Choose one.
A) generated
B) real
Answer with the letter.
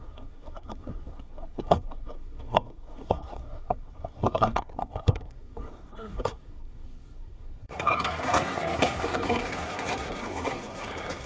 A